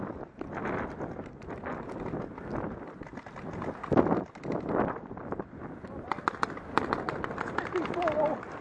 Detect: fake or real real